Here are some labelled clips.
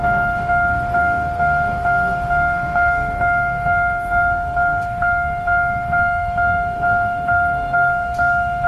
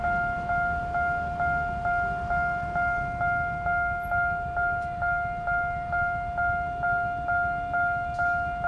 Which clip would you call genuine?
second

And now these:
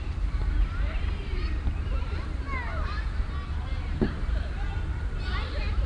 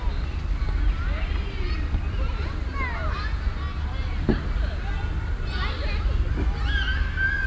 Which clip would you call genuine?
second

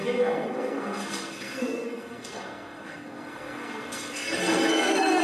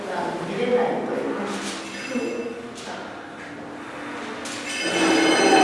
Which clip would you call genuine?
second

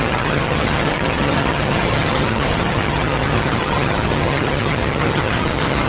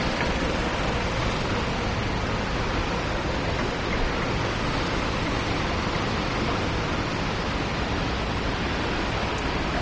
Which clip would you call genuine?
second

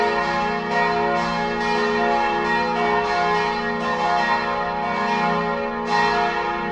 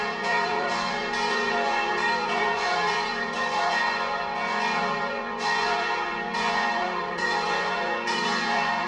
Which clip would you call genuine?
first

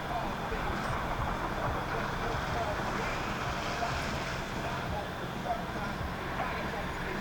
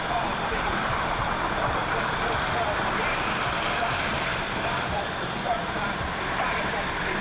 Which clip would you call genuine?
first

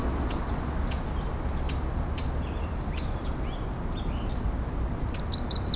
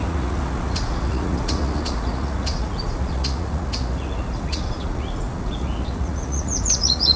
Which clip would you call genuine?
first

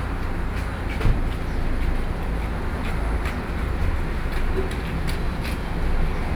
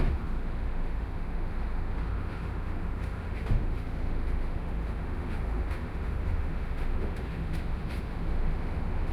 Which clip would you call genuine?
first